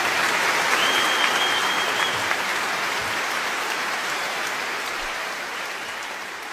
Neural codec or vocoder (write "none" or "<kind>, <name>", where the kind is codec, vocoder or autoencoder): vocoder, BigVGAN v2